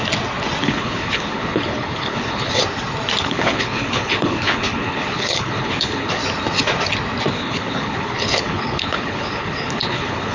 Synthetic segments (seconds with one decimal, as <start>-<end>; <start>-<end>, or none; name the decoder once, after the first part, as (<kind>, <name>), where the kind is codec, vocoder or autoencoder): 0.6-2.6 (codec, HILCodec); 3.2-6.2; 7.3-10.3